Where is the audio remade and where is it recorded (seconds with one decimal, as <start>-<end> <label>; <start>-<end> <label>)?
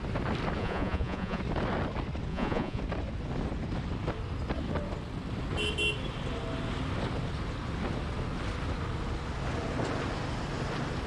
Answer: 0.0-0.6 recorded; 0.6-1.4 remade; 1.4-2.3 recorded; 2.3-2.8 remade; 2.8-11.1 recorded